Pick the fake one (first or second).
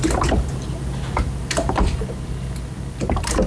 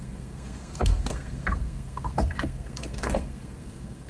second